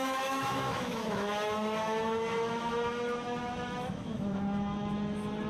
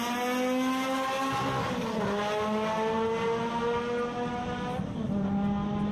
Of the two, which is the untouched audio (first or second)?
second